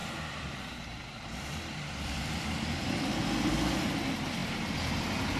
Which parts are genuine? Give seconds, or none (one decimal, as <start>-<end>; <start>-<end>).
3.2-4.4; 5.0-5.4